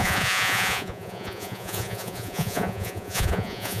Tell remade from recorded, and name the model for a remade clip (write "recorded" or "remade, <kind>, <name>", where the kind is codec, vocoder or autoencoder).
remade, vocoder, Vocos